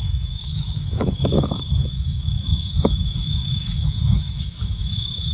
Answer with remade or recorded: remade